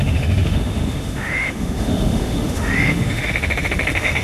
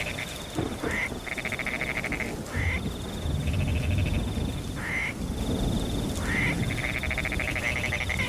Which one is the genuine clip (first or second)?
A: second